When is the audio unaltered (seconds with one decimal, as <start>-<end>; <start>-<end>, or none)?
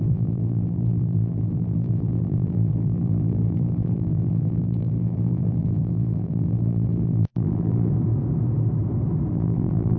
7.9-9.3